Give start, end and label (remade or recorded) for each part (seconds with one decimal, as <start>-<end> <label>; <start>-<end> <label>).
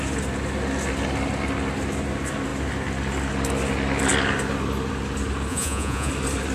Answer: 0.0-5.5 recorded; 5.5-6.1 remade; 6.1-6.5 recorded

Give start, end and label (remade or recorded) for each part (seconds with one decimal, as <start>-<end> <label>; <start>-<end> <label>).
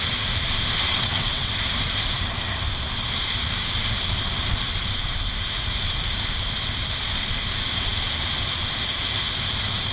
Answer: 0.0-0.9 recorded; 0.9-1.5 remade; 1.5-9.9 recorded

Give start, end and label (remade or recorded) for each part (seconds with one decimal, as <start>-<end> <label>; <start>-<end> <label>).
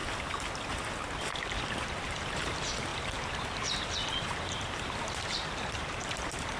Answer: 0.0-2.0 recorded; 2.0-6.6 remade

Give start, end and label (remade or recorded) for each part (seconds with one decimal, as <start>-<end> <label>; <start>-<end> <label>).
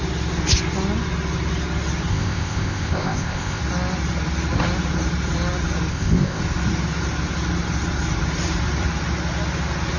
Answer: 0.0-2.1 recorded; 2.1-3.6 remade; 3.6-5.9 recorded; 5.9-6.4 remade; 6.4-10.0 recorded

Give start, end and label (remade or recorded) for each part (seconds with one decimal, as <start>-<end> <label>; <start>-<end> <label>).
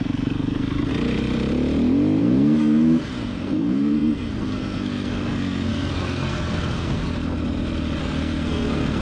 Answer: 0.0-0.9 remade; 0.9-2.2 recorded; 2.2-7.0 remade; 7.0-8.0 recorded; 8.0-9.0 remade